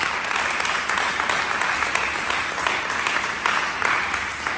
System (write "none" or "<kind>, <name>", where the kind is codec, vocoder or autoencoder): none